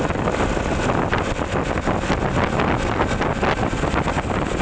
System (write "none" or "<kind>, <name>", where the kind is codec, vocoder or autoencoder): none